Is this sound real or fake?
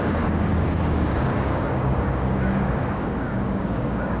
fake